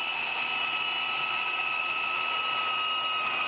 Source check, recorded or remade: recorded